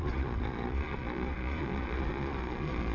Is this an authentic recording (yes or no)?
no